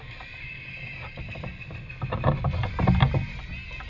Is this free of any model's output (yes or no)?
yes